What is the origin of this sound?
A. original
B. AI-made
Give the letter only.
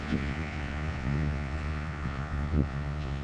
B